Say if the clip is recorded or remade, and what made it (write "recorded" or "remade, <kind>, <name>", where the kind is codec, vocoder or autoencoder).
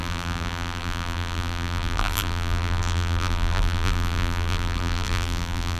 remade, vocoder, BigVGAN v2